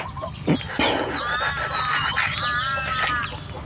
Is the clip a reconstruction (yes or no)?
no